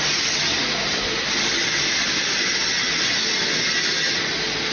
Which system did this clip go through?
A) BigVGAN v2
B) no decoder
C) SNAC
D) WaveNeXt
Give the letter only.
B